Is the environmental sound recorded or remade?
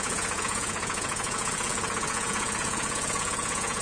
remade